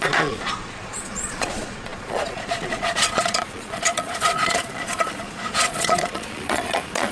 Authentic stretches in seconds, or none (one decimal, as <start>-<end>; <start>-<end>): none